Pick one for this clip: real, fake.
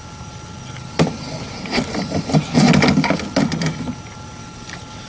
real